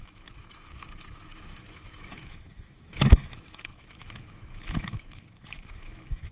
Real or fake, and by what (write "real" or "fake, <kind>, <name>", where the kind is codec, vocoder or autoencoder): fake, autoencoder, DAC-VAE